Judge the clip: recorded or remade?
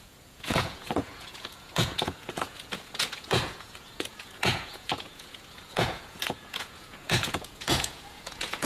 remade